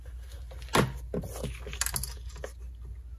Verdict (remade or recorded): recorded